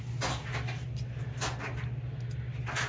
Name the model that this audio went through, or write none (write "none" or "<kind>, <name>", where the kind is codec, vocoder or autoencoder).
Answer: none